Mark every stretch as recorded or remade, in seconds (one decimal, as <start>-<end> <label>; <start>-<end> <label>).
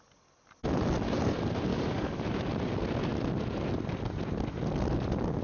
0.0-1.7 recorded; 1.7-2.2 remade; 2.2-5.4 recorded